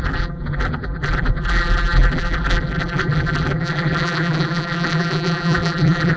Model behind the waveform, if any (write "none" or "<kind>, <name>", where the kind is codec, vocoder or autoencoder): vocoder, BigVGAN v2